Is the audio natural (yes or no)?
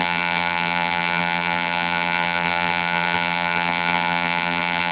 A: no